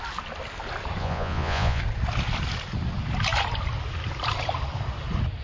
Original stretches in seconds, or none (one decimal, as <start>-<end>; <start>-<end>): 0.0-1.0; 1.8-5.4